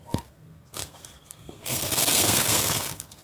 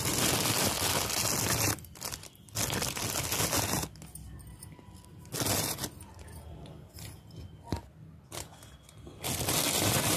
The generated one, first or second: first